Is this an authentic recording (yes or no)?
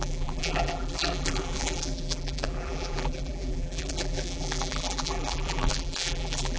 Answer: no